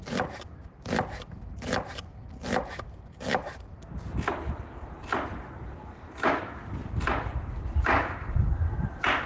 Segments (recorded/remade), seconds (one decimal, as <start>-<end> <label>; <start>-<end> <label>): 0.0-6.8 recorded; 6.8-8.8 remade; 8.8-9.3 recorded